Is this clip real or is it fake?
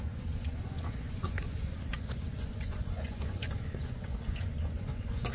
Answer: fake